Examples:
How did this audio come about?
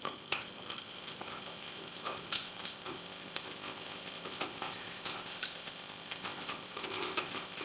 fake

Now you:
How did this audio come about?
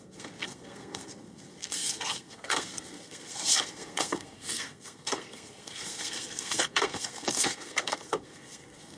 fake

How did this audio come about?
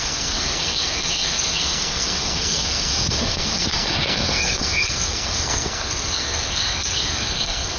fake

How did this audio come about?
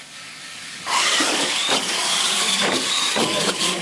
fake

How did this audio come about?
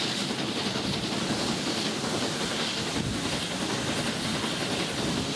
real